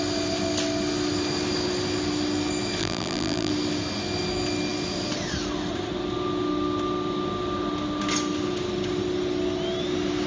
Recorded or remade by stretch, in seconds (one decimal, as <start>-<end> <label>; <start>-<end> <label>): 0.0-2.8 recorded; 2.8-3.5 remade; 3.5-10.3 recorded